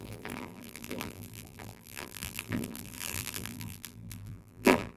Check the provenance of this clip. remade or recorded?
remade